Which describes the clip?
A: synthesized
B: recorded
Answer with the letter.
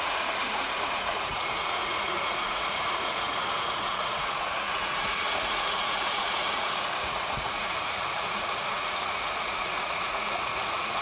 A